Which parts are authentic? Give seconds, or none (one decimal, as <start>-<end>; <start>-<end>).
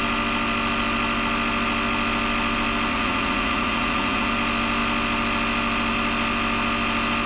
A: 0.0-2.9; 4.3-7.3